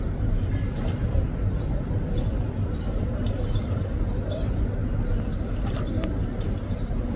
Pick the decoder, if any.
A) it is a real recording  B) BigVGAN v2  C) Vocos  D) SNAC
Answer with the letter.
A